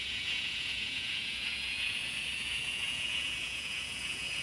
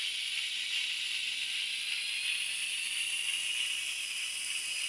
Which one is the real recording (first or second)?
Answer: second